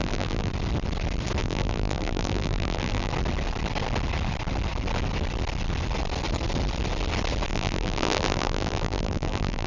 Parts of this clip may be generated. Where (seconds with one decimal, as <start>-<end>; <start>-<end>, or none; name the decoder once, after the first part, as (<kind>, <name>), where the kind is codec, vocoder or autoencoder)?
0.0-0.5 (vocoder, BigVGAN v2); 1.4-3.1; 7.5-9.7